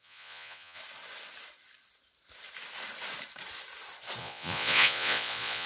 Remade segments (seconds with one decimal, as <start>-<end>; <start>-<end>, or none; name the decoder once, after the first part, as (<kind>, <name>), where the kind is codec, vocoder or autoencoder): 0.0-0.8 (vocoder, Vocos); 4.2-5.7

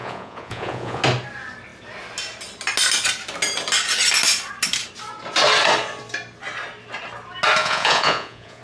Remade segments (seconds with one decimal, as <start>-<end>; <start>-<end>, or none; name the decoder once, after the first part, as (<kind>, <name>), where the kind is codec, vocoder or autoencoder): 0.0-1.0 (vocoder, Vocos); 7.6-8.6

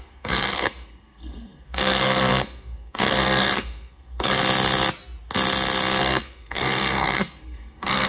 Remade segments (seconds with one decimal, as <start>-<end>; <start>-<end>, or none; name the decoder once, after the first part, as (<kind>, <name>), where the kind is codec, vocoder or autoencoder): 0.0-4.4 (codec, SNAC); 6.0-8.1

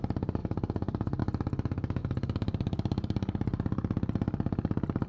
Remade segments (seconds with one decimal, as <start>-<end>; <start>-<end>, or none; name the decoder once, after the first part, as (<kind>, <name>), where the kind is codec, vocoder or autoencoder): 0.4-1.2 (vocoder, BigVGAN v2); 2.0-5.1

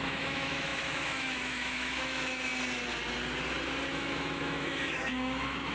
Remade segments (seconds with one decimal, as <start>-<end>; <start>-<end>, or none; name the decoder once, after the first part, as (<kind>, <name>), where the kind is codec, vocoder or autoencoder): 0.0-2.5 (autoencoder, DAC-VAE); 3.9-5.7

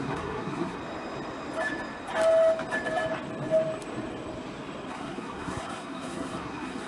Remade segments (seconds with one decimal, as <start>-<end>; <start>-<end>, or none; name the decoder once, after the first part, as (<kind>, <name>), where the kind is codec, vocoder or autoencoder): 0.0-0.8 (codec, SNAC); 4.9-6.9

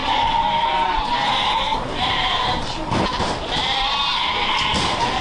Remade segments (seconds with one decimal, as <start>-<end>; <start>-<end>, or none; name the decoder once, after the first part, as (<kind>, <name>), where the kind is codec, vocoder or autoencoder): 0.0-1.1 (vocoder, BigVGAN v2); 1.7-2.5; 3.1-4.1